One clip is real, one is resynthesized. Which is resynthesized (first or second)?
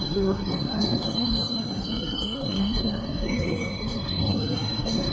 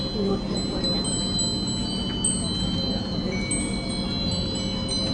first